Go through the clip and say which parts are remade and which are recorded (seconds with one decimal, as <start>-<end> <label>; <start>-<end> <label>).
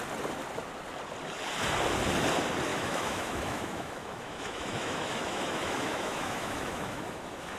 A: 0.0-2.7 recorded; 2.7-7.6 remade